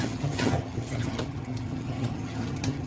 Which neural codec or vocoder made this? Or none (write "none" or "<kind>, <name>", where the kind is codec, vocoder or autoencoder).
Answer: vocoder, HiFi-GAN